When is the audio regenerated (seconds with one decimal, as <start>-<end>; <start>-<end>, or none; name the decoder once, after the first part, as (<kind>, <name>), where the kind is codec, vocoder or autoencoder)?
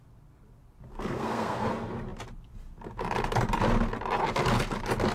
0.9-1.7 (codec, SNAC)